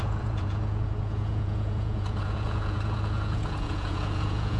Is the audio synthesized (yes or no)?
yes